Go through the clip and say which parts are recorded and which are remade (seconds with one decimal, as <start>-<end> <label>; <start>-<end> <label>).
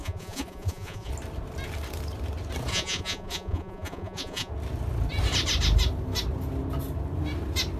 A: 0.0-1.1 remade; 1.1-2.7 recorded; 2.7-4.5 remade; 4.5-7.8 recorded